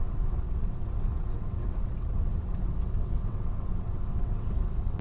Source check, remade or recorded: remade